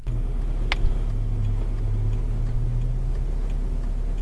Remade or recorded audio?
recorded